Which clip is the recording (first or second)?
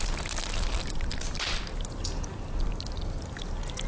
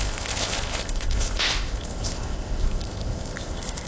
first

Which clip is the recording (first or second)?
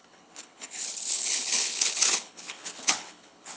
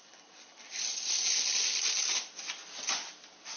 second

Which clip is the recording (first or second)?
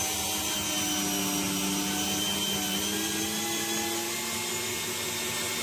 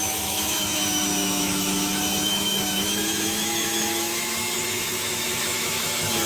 first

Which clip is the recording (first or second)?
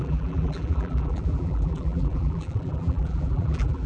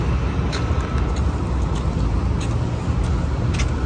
second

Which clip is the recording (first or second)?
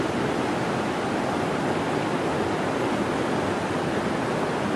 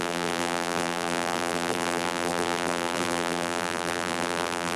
first